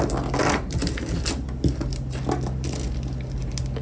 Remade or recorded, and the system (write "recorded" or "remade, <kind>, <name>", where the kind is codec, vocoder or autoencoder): recorded